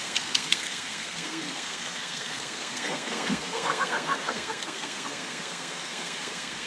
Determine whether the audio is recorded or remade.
remade